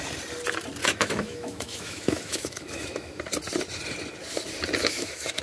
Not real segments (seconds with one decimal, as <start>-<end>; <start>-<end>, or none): 0.8-3.2; 4.8-5.4